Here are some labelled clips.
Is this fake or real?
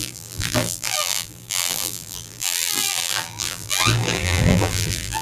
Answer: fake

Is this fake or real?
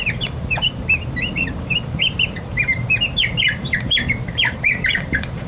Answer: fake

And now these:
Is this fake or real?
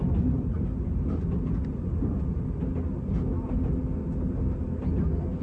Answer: real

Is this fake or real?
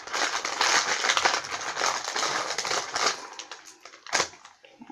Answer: real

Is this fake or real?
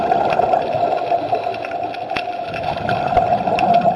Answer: fake